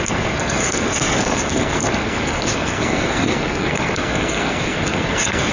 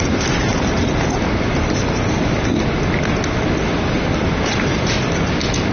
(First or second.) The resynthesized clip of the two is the first